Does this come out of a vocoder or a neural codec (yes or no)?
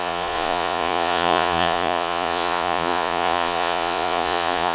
yes